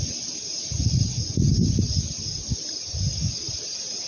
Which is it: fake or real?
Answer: real